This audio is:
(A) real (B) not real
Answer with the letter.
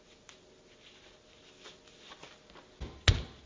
A